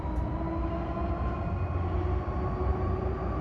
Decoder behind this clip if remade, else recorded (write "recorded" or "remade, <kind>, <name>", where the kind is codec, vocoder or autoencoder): recorded